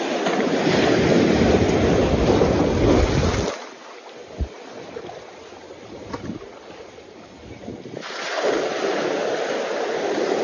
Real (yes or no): yes